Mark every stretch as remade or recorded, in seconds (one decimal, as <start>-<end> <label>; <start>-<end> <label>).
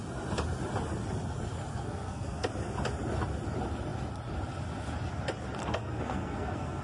0.0-1.7 recorded; 1.7-2.5 remade; 2.5-5.6 recorded; 5.6-6.8 remade